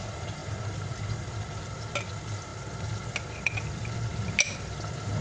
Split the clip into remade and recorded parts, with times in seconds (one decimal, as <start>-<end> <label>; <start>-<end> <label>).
0.0-5.2 recorded